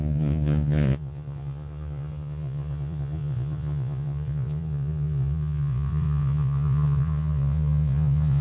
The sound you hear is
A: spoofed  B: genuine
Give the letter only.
A